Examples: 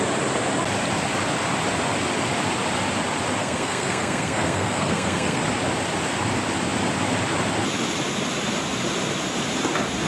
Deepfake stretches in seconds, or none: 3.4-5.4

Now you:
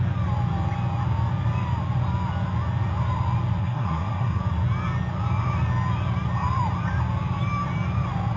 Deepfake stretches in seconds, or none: 3.6-4.4

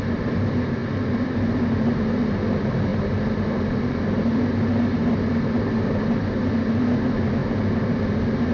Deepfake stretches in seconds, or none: none

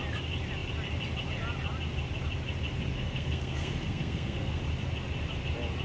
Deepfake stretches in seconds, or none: 2.9-4.6

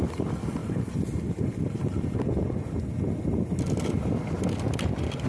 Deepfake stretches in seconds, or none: none

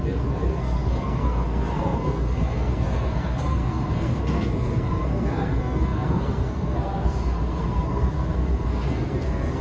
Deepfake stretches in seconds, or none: 0.0-9.6